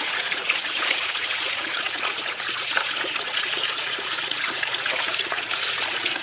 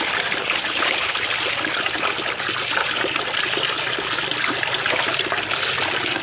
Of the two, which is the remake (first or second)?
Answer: first